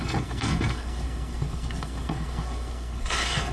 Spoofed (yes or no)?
yes